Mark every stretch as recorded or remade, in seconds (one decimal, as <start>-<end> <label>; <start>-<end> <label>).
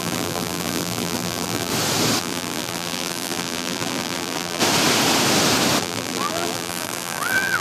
0.0-1.7 remade; 1.7-2.2 recorded; 2.2-4.6 remade; 4.6-5.8 recorded; 5.8-7.6 remade